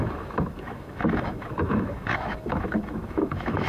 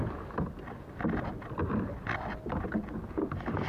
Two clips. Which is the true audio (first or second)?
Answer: second